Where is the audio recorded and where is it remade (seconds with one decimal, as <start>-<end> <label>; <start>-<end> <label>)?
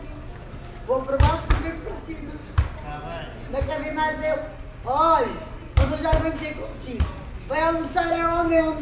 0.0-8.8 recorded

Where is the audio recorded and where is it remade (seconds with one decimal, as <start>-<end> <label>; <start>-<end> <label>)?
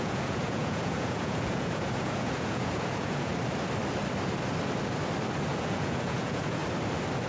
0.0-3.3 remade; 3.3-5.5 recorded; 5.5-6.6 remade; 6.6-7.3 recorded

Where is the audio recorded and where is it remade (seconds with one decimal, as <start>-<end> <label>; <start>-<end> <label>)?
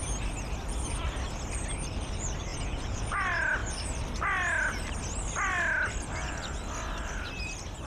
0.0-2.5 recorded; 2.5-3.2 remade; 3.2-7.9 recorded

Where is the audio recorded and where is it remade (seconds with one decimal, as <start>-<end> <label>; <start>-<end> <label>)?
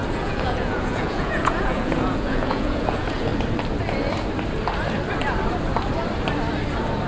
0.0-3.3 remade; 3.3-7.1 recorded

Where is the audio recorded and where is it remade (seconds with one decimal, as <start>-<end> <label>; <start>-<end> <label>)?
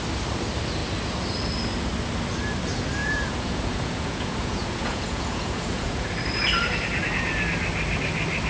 0.0-3.0 recorded; 3.0-6.1 remade; 6.1-8.5 recorded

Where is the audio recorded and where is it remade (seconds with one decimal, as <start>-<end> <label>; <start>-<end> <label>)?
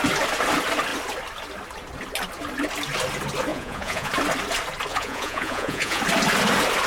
0.0-3.5 recorded; 3.5-4.1 remade; 4.1-4.9 recorded; 4.9-6.0 remade; 6.0-6.9 recorded